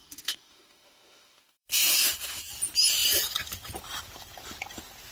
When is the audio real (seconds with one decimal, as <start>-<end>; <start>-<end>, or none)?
2.4-5.1